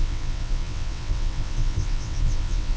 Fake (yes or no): yes